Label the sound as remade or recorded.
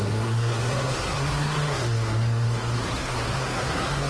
remade